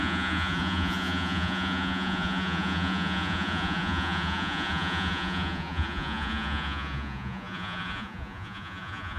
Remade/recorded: remade